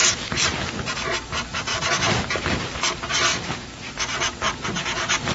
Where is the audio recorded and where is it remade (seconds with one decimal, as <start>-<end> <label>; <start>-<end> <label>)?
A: 0.0-0.5 remade; 0.5-1.7 recorded; 1.7-2.2 remade; 2.2-5.3 recorded